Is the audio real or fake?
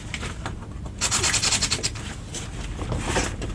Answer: real